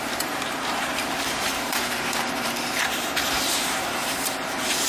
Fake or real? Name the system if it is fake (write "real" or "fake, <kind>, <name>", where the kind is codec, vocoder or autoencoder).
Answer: fake, vocoder, BigVGAN v2